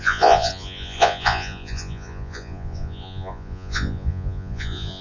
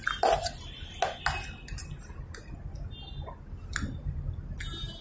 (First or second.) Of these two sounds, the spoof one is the first